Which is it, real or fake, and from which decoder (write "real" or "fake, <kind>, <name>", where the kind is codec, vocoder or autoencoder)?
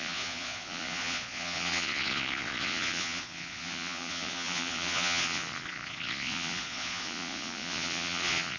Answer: fake, vocoder, Vocos